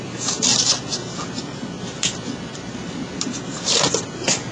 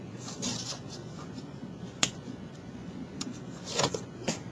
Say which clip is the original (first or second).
first